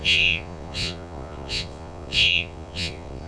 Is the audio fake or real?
fake